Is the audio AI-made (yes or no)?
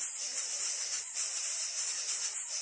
no